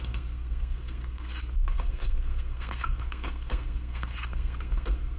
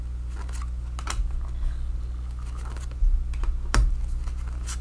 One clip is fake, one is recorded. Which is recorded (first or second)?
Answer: second